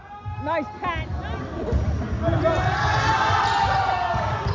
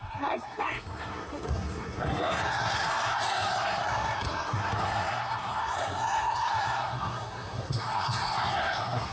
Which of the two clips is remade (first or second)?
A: second